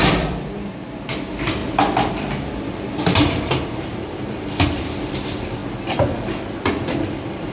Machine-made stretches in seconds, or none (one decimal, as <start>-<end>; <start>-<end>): 0.0-1.6; 2.1-5.6; 6.7-7.5